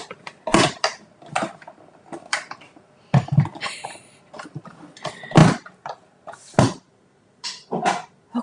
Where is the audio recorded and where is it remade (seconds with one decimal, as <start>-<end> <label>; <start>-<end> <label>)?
0.0-8.4 recorded